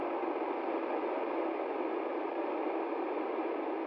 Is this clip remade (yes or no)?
no